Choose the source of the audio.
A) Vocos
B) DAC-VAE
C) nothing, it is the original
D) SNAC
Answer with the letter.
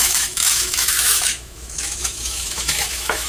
B